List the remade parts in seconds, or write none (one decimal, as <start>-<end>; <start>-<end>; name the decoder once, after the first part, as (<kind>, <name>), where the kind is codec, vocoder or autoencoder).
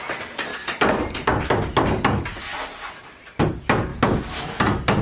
none